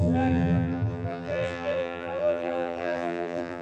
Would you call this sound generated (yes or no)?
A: yes